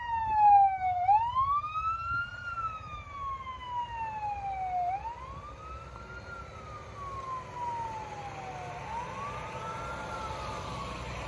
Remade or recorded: recorded